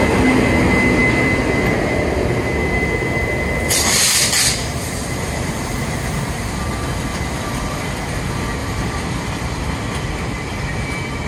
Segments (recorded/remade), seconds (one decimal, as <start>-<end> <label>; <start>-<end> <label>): 0.0-4.7 recorded; 4.7-6.6 remade; 6.6-7.1 recorded; 7.1-7.8 remade; 7.8-8.6 recorded; 8.6-9.6 remade; 9.6-11.3 recorded